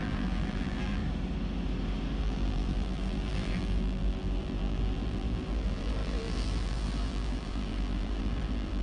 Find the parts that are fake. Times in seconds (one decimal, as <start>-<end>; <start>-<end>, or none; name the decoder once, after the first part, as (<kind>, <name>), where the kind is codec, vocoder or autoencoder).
0.0-1.0 (vocoder, BigVGAN v2); 2.2-8.8